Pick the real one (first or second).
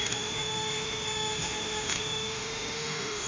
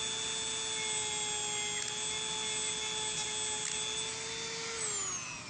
second